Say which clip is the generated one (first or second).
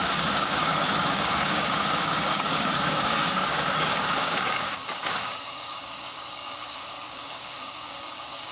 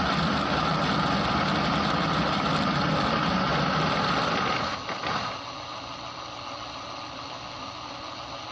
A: first